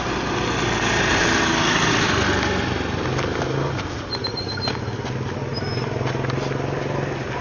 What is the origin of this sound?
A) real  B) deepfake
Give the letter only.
A